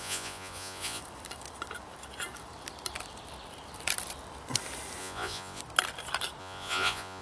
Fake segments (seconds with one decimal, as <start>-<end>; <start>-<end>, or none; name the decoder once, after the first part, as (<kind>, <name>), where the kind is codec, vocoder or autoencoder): 0.0-1.0 (vocoder, Vocos); 5.0-5.6; 6.4-7.2